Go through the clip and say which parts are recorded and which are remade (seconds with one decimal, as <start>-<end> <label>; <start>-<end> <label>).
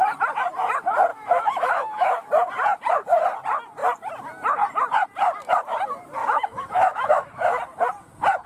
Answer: 0.0-1.1 recorded; 1.1-2.3 remade; 2.3-6.2 recorded; 6.2-7.6 remade; 7.6-8.5 recorded